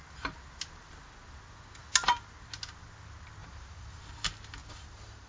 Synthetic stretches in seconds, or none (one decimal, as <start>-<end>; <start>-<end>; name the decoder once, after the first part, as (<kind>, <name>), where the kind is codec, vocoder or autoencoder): 3.4-4.1 (vocoder, BigVGAN v2); 4.6-5.3